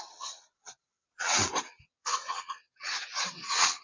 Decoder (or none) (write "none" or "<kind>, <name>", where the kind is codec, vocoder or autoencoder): vocoder, WaveNeXt